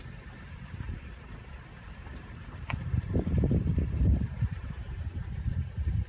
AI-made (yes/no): yes